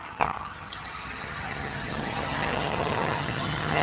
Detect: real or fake fake